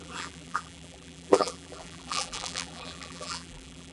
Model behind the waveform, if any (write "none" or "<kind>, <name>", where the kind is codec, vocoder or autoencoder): vocoder, BigVGAN v2